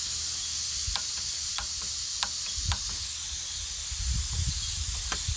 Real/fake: real